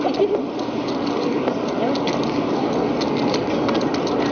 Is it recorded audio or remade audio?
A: recorded